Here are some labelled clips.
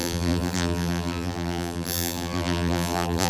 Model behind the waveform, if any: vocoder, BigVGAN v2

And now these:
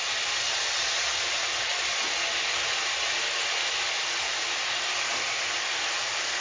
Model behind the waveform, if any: none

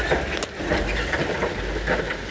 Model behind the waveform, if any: none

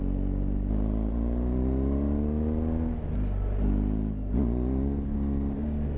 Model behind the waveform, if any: none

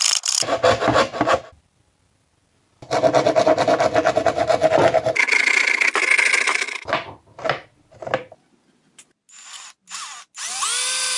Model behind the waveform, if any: none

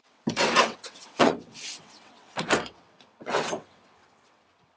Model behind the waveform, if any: vocoder, WaveNeXt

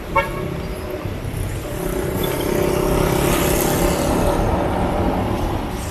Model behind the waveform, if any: none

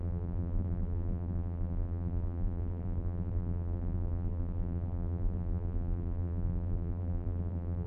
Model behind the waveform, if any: vocoder, BigVGAN v2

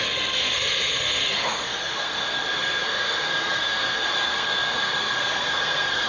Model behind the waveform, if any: codec, SNAC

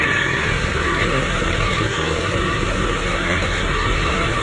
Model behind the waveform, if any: codec, SNAC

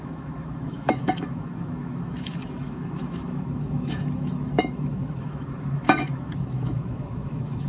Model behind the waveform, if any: autoencoder, DAC-VAE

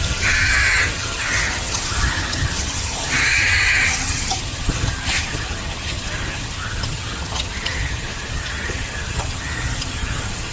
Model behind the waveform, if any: vocoder, HiFi-GAN